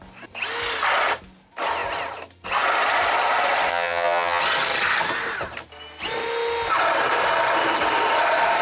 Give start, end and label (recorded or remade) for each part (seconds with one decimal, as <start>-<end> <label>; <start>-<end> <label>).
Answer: 0.0-3.7 recorded; 3.7-4.4 remade; 4.4-8.6 recorded